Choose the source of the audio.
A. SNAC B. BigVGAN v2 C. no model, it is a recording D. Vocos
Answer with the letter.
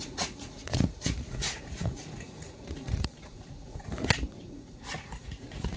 D